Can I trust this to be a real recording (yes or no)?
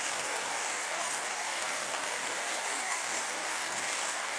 no